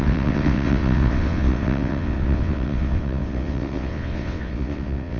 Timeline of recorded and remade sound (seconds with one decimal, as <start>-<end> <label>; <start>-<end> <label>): 0.0-5.2 remade